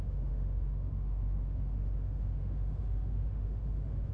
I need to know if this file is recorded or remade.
remade